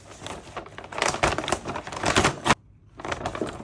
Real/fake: real